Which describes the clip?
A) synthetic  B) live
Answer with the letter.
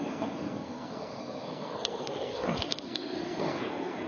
A